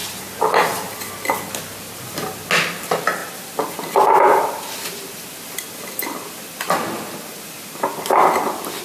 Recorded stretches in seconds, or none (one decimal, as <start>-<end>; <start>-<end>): 0.0-8.8

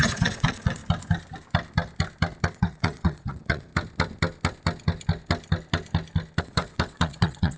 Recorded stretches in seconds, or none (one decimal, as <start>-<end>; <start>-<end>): 0.8-2.5; 3.7-6.4

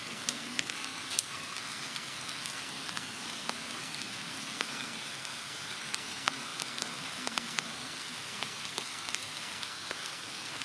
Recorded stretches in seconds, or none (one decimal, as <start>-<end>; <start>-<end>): none

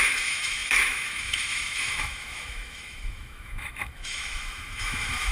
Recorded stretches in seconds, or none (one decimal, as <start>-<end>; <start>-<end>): none